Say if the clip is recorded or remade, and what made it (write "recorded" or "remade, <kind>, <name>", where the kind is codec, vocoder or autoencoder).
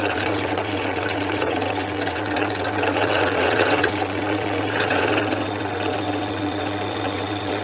remade, vocoder, WaveNeXt